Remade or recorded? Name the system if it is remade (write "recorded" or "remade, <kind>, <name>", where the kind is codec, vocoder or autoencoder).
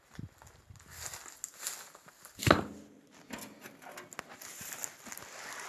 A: recorded